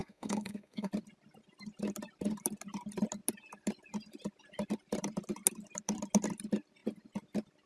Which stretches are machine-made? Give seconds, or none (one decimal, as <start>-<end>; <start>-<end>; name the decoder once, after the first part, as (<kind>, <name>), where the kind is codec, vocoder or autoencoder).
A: 0.0-0.9 (codec, SNAC)